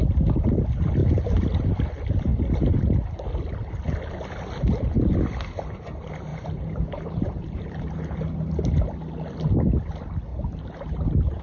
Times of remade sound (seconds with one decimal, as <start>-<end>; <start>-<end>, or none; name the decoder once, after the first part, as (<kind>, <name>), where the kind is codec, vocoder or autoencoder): 2.3-2.8 (vocoder, BigVGAN v2); 6.3-7.8; 10.3-11.4